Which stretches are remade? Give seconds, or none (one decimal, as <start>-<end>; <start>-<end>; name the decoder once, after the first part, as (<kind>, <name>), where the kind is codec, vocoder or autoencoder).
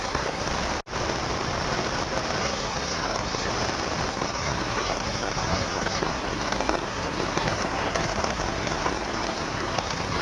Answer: 0.0-0.5 (codec, SNAC); 2.4-3.5; 4.1-10.2